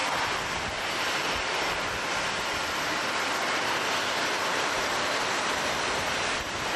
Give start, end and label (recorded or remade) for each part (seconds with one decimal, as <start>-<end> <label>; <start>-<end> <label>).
0.0-4.4 recorded; 4.4-5.8 remade; 5.8-6.8 recorded